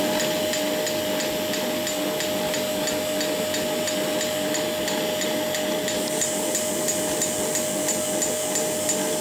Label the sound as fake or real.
real